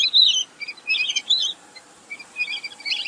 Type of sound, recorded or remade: remade